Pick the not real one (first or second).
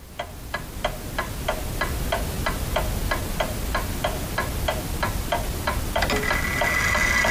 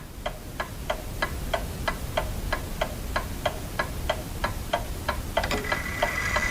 second